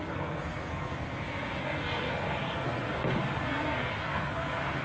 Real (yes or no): no